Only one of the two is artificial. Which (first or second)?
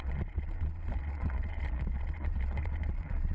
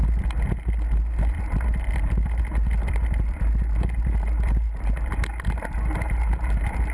first